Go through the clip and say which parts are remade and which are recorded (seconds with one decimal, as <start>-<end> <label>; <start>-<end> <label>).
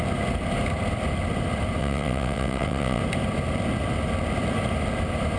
0.0-1.8 recorded; 1.8-3.0 remade; 3.0-5.4 recorded